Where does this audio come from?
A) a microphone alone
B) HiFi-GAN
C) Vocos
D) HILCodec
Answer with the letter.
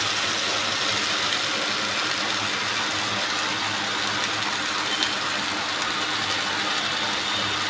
A